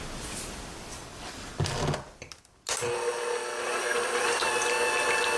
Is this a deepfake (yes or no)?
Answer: no